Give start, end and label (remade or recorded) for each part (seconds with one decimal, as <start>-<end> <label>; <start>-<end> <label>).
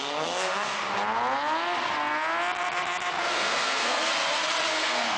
0.0-0.8 remade; 0.8-3.2 recorded; 3.2-4.1 remade; 4.1-4.7 recorded; 4.7-5.2 remade